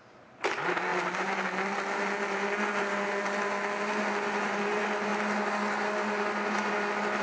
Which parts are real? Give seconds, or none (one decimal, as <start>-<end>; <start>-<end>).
0.0-7.2